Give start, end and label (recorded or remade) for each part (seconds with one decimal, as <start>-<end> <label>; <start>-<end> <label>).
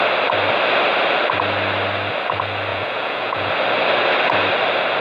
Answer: 0.0-2.7 recorded; 2.7-3.5 remade; 3.5-5.0 recorded